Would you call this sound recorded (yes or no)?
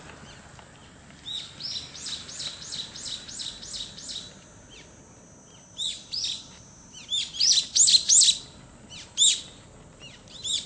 yes